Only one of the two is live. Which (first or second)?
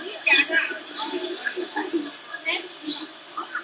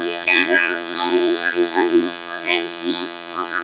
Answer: first